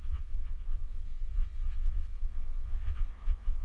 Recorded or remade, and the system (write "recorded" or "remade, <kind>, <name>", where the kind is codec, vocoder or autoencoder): remade, vocoder, WaveNeXt